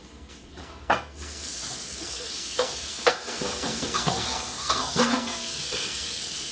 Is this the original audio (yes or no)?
no